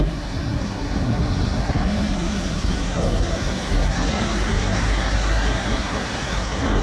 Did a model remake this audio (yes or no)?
yes